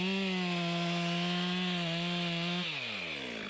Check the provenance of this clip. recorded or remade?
recorded